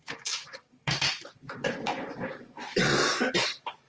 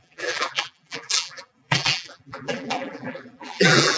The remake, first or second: second